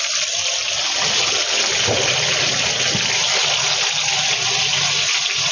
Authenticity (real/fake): real